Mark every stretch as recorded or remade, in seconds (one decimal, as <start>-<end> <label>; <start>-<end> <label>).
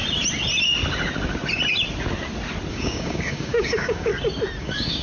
0.0-2.7 recorded; 2.7-4.1 remade; 4.1-4.6 recorded; 4.6-5.0 remade